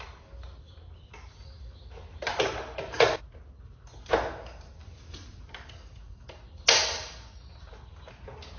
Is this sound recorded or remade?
recorded